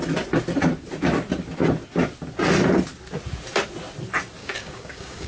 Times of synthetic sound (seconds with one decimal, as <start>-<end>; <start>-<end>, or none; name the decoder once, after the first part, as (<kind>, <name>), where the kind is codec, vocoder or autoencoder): 4.4-5.3 (codec, DAC)